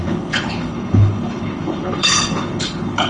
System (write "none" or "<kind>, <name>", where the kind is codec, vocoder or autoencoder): codec, HILCodec